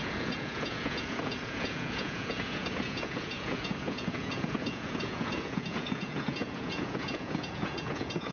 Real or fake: fake